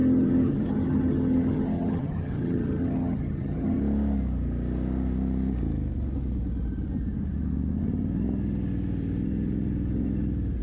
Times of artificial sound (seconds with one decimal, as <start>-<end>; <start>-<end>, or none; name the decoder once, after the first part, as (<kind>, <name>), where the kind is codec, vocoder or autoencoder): 0.0-3.8 (vocoder, HiFi-GAN)